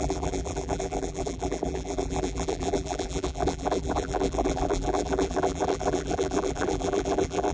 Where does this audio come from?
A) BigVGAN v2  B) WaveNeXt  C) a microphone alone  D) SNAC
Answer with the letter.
A